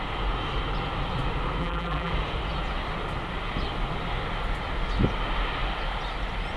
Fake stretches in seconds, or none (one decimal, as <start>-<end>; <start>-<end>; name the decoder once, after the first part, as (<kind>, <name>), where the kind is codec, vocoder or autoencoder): 1.6-2.1 (vocoder, BigVGAN v2)